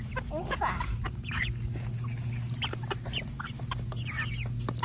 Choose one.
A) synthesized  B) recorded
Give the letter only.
B